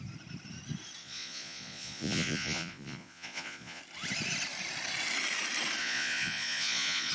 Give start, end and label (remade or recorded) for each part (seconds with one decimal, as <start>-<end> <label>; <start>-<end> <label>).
0.0-1.0 recorded; 1.0-3.8 remade; 3.8-5.8 recorded; 5.8-7.1 remade